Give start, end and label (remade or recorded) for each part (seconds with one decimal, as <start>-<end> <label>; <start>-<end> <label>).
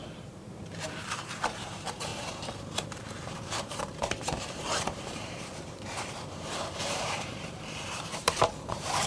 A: 0.0-9.1 remade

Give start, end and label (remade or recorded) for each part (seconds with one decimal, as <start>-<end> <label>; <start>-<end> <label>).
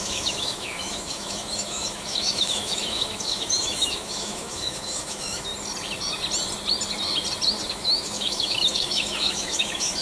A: 0.0-5.5 remade; 5.5-7.7 recorded; 7.7-10.0 remade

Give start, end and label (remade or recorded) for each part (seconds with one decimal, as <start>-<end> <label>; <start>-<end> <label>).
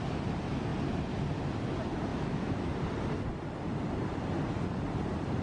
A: 0.0-2.1 recorded; 2.1-2.7 remade; 2.7-5.4 recorded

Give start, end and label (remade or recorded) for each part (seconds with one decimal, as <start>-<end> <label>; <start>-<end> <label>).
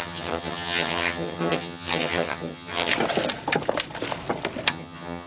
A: 0.0-2.9 remade; 2.9-4.7 recorded; 4.7-5.3 remade